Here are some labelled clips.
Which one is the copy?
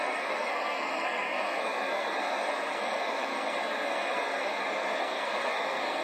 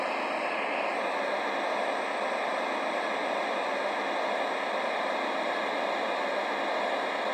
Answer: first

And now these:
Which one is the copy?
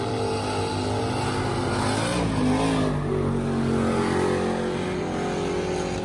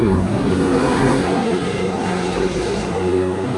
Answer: second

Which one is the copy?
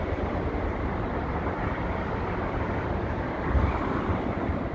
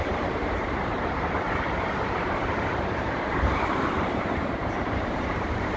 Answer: second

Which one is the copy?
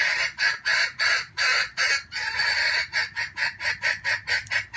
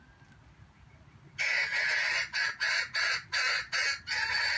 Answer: first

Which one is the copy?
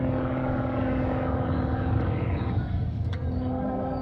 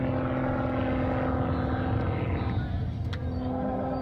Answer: first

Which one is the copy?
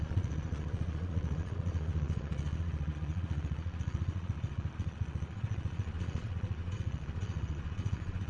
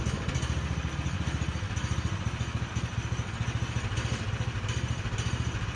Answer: first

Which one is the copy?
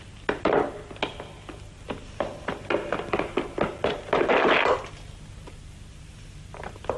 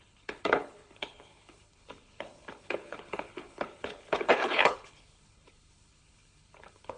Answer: second